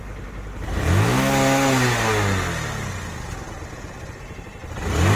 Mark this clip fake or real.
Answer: real